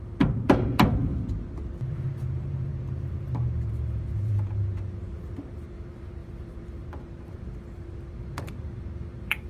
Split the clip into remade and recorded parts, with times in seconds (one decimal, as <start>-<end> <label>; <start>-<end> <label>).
0.0-1.1 remade; 1.1-1.9 recorded; 1.9-9.5 remade